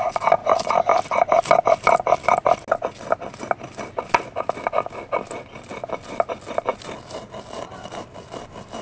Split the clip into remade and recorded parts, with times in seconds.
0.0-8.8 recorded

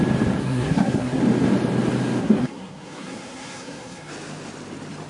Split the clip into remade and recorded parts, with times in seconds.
0.0-0.4 recorded; 0.4-1.2 remade; 1.2-2.2 recorded; 2.2-4.1 remade; 4.1-5.1 recorded

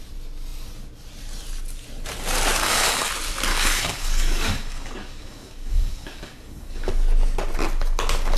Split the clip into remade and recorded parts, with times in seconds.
0.0-2.6 recorded; 2.6-3.1 remade; 3.1-3.5 recorded; 3.5-6.9 remade; 6.9-8.4 recorded

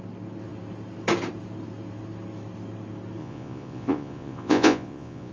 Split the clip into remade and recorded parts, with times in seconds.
0.0-3.2 recorded; 3.2-5.3 remade